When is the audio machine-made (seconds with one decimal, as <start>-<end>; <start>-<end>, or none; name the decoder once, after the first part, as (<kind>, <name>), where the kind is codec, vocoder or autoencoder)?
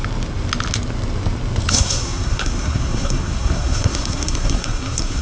1.7-5.2 (codec, SNAC)